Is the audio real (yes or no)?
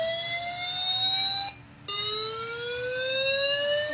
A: yes